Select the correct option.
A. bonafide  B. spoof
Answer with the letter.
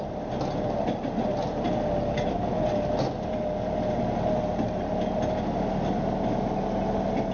A